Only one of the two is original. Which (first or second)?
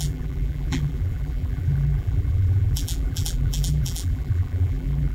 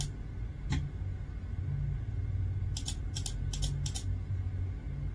second